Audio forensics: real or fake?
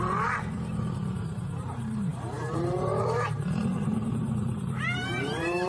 fake